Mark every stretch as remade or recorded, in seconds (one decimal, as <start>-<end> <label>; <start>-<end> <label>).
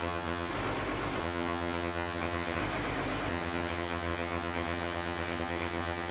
0.0-0.5 remade; 0.5-1.2 recorded; 1.2-2.6 remade; 2.6-3.3 recorded; 3.3-6.1 remade